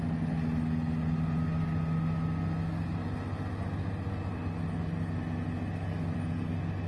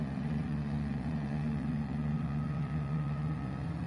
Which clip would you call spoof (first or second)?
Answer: second